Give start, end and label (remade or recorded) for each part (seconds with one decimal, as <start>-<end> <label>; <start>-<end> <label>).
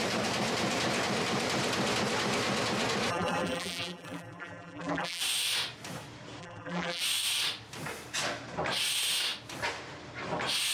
0.0-3.1 recorded; 3.1-5.2 remade; 5.2-6.4 recorded; 6.4-7.0 remade; 7.0-10.7 recorded